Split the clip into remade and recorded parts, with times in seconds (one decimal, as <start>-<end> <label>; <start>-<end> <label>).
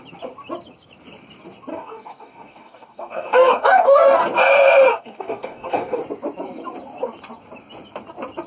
0.0-1.7 recorded; 1.7-4.2 remade; 4.2-4.9 recorded; 4.9-6.0 remade; 6.0-8.5 recorded